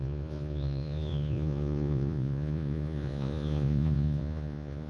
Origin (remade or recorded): remade